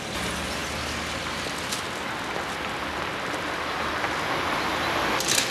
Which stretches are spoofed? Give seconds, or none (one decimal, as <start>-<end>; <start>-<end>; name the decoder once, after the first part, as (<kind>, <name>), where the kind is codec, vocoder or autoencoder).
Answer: none